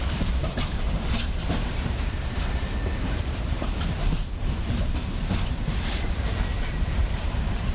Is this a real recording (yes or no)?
no